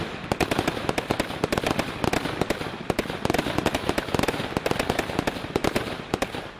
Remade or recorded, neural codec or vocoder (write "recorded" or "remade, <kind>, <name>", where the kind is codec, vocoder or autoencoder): recorded